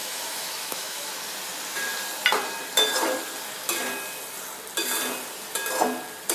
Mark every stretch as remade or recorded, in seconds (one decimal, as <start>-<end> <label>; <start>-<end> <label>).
0.0-1.1 remade; 1.1-6.3 recorded